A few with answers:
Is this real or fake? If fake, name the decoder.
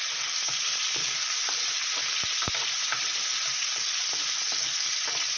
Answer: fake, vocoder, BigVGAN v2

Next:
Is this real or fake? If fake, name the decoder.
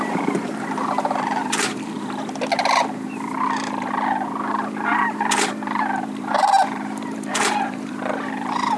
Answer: fake, vocoder, BigVGAN v2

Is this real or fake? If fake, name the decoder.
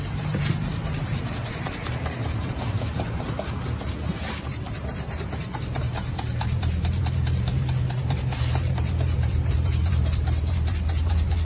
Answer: fake, vocoder, BigVGAN v2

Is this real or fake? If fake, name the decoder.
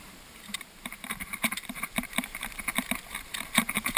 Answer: fake, vocoder, BigVGAN v2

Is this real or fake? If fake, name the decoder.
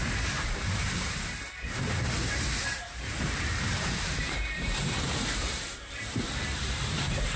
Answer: fake, vocoder, BigVGAN v2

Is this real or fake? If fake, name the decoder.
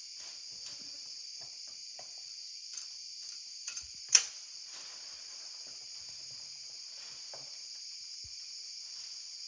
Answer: fake, vocoder, BigVGAN v2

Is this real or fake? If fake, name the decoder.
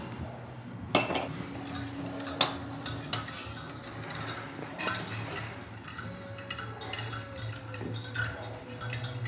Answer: real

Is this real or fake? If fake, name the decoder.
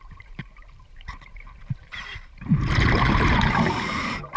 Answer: fake, vocoder, BigVGAN v2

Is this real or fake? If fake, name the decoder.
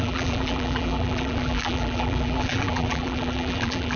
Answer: fake, vocoder, BigVGAN v2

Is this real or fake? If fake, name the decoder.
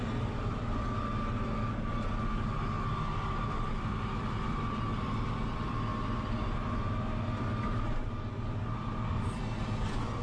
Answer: real